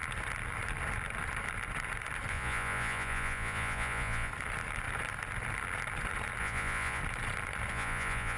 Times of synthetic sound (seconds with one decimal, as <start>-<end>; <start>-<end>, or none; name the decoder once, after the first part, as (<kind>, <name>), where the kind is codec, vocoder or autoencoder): 2.3-4.3 (vocoder, Vocos); 6.4-7.0; 7.7-8.4